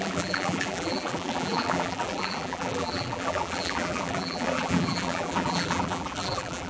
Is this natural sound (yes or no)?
no